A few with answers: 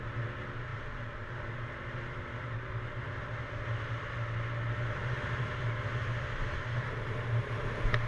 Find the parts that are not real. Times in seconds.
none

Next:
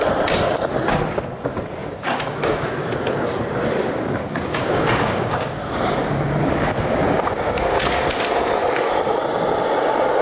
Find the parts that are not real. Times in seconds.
1.8-2.6 (codec, DAC); 3.8-7.8

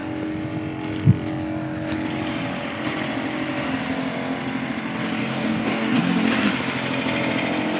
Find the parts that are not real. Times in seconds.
5.2-6.0 (codec, DAC)

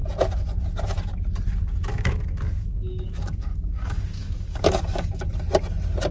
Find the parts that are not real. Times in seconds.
1.9-5.2 (codec, DAC)

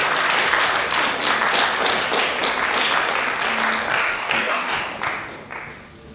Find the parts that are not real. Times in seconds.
3.9-4.8 (codec, DAC)